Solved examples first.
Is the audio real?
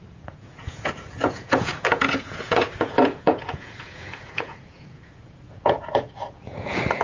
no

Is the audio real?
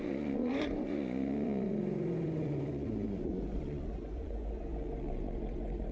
no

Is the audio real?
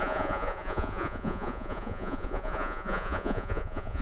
no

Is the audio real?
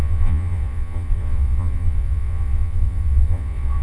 no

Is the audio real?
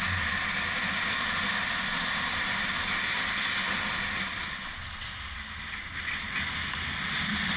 yes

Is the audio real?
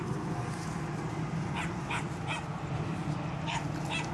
yes